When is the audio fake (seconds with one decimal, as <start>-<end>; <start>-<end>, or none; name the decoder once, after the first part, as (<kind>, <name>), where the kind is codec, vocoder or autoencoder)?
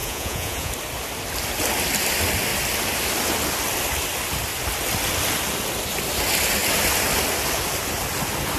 0.0-0.7 (vocoder, Vocos)